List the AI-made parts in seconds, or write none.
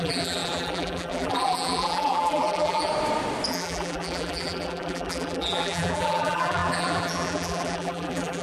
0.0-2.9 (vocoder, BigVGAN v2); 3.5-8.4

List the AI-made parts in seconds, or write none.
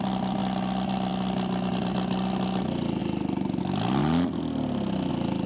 none